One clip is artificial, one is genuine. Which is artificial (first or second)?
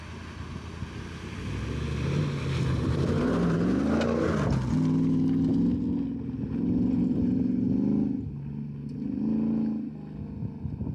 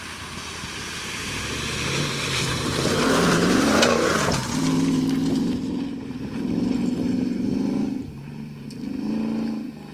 second